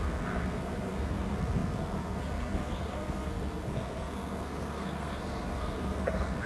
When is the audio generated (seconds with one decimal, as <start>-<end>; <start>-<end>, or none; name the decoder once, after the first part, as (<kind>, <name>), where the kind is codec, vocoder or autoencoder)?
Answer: 0.0-6.5 (codec, SNAC)